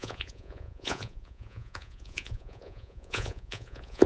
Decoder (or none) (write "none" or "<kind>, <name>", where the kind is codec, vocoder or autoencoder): vocoder, Vocos